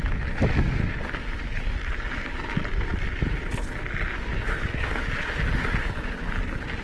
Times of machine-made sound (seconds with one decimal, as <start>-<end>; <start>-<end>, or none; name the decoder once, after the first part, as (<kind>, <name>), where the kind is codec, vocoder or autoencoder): none